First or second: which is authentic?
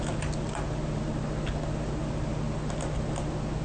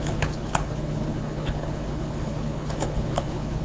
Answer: first